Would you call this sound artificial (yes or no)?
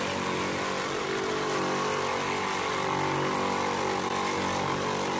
no